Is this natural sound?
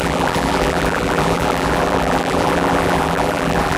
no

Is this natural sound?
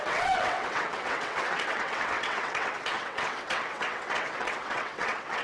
no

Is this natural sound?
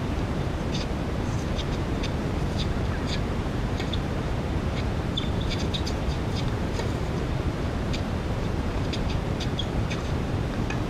no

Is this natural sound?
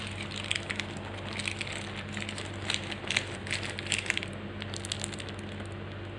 yes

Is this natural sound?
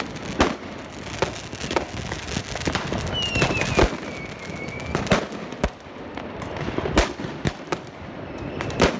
yes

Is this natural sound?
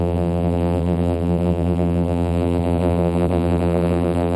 no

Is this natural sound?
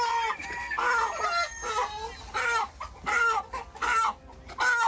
yes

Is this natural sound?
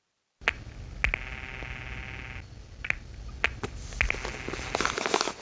yes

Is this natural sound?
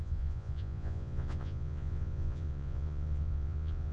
no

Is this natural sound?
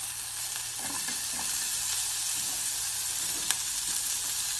yes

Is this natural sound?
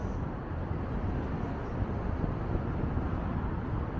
yes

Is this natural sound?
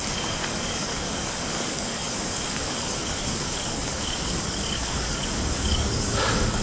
no